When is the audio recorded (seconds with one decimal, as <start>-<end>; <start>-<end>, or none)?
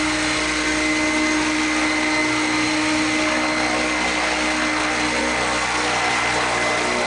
0.0-7.1